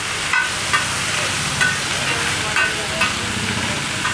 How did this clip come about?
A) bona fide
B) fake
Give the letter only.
B